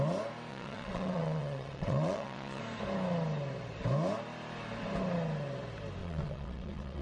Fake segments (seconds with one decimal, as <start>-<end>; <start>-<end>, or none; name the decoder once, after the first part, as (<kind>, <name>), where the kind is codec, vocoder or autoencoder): 0.5-2.6 (vocoder, WaveNeXt); 6.0-7.0